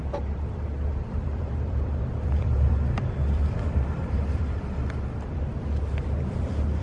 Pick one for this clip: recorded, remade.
remade